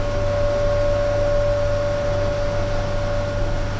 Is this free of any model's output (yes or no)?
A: yes